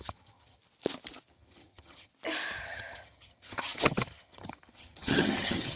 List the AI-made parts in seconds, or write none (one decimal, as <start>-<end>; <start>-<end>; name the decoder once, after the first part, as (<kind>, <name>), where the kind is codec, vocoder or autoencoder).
0.0-0.6 (vocoder, HiFi-GAN); 1.3-2.1; 2.6-5.8